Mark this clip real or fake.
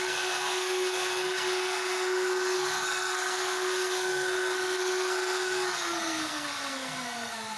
fake